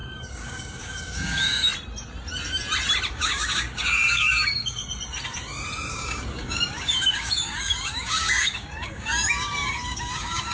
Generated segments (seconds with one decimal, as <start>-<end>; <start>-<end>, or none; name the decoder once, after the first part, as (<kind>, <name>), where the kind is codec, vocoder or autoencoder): 0.0-1.7 (codec, DAC); 3.1-4.8; 5.9-10.5